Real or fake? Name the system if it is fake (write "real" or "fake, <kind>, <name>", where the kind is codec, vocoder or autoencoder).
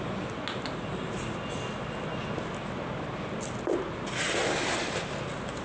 real